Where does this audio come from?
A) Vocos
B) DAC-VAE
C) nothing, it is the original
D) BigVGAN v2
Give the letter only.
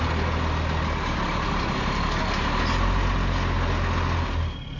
C